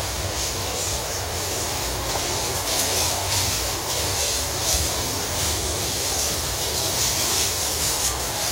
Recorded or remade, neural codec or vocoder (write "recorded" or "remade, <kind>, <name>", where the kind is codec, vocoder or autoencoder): remade, codec, DAC